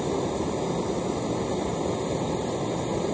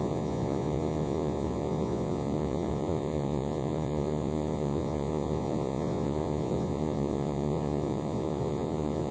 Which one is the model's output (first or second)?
second